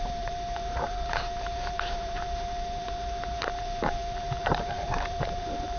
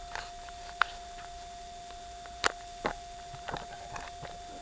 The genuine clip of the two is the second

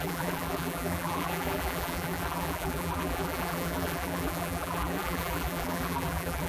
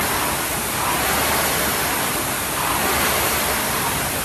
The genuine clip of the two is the second